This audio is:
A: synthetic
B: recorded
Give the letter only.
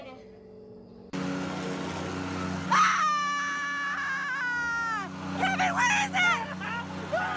B